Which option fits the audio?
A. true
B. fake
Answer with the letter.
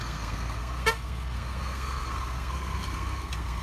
B